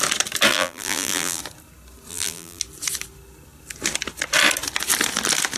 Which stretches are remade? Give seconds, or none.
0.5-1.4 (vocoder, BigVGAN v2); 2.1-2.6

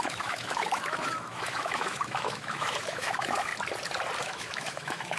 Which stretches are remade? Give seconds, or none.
0.0-3.5 (autoencoder, DAC-VAE); 4.2-5.2

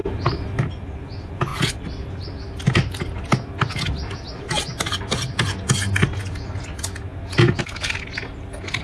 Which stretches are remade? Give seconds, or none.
none

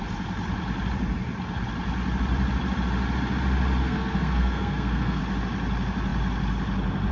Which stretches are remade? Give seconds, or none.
3.8-5.2 (codec, SNAC)

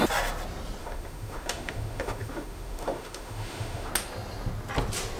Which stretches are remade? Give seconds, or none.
0.8-3.9 (autoencoder, DAC-VAE)

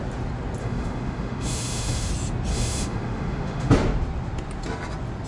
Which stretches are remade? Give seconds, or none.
0.6-2.1 (autoencoder, DAC-VAE); 2.5-3.7

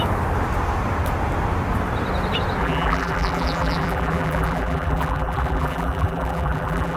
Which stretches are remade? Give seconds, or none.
2.6-7.0 (vocoder, BigVGAN v2)

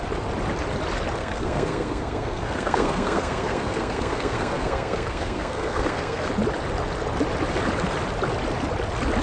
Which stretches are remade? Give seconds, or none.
1.2-6.3 (codec, SNAC)